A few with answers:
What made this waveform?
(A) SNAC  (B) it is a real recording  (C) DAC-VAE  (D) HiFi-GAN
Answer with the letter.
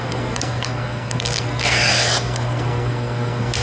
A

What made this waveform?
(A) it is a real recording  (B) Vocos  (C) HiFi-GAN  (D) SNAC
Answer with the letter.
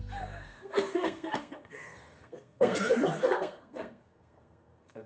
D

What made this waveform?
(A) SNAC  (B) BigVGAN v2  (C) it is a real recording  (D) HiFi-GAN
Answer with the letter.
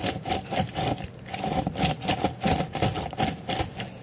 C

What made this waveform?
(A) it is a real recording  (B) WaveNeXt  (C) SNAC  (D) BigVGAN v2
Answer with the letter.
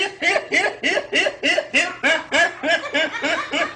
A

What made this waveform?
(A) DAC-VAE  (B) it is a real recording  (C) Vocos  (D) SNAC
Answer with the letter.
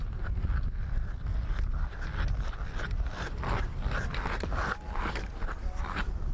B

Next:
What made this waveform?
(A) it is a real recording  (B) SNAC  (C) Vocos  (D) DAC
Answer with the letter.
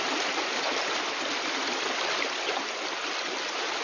A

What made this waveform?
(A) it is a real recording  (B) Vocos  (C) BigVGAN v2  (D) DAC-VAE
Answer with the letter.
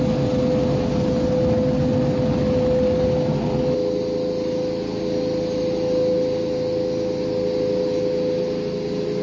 A